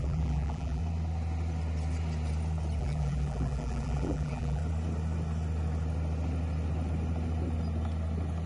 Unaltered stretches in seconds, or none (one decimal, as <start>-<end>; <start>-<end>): 0.8-2.8; 4.6-8.5